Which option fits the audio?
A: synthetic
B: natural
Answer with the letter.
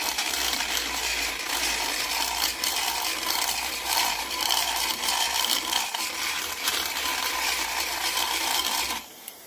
A